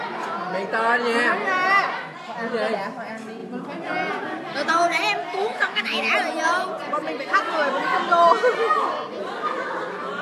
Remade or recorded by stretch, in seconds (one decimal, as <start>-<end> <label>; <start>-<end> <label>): 0.0-5.4 recorded; 5.4-6.1 remade; 6.1-10.2 recorded

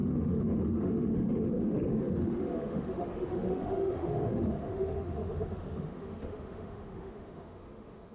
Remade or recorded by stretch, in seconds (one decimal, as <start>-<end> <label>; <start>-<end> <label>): 0.0-8.1 remade